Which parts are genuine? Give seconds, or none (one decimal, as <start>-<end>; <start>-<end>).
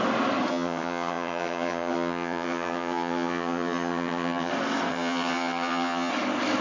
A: 0.0-0.5; 4.5-4.9; 6.1-6.6